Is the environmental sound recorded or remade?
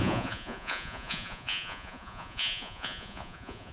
remade